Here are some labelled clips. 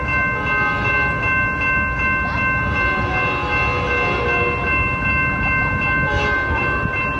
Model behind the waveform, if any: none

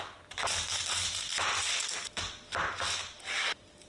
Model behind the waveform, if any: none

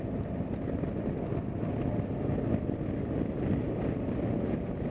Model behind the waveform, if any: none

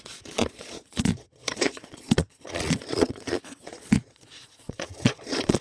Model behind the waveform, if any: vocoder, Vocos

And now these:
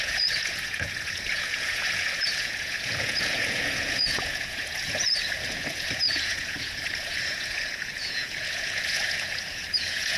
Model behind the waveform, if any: vocoder, Vocos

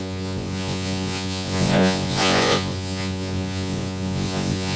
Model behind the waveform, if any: vocoder, Vocos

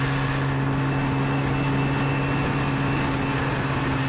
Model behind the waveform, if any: none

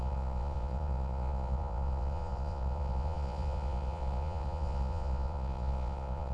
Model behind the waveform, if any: vocoder, Vocos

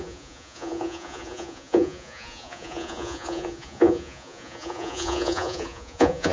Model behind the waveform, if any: vocoder, Vocos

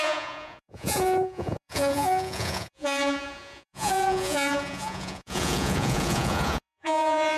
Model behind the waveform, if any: vocoder, Vocos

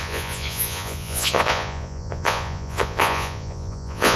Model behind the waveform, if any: vocoder, Vocos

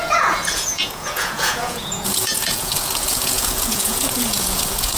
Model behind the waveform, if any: vocoder, Vocos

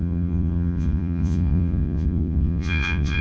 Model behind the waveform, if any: vocoder, Vocos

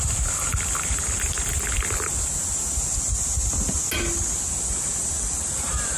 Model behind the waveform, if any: none